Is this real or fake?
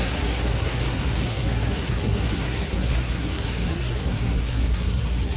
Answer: fake